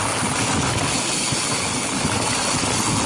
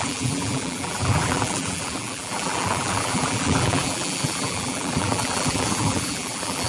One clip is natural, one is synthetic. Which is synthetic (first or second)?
second